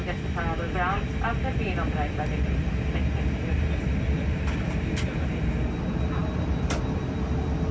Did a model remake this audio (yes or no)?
no